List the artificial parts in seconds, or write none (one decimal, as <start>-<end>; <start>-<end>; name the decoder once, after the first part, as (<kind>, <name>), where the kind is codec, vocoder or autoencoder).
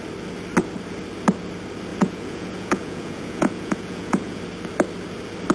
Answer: 1.9-4.4 (vocoder, Vocos)